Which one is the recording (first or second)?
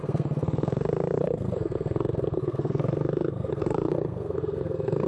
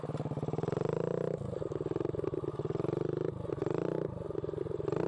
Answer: second